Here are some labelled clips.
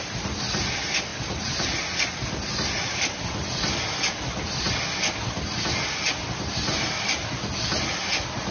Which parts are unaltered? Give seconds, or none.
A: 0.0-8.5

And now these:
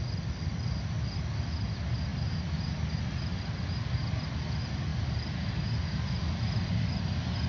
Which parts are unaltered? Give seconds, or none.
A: 0.0-2.1; 2.7-4.9; 6.3-7.5

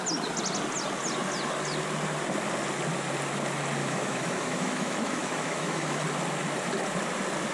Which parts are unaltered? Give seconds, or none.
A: 0.0-3.8; 6.0-7.5

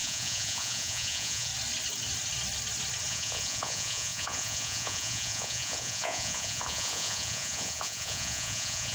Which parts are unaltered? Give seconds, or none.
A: 1.5-3.1

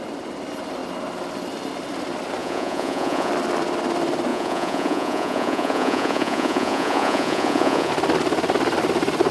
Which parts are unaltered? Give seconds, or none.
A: 0.0-2.4; 3.3-4.3; 7.9-9.3